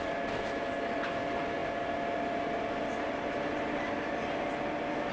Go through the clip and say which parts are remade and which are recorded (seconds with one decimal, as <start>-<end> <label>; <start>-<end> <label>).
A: 0.0-5.1 recorded